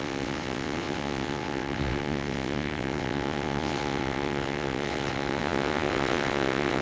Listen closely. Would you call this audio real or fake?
fake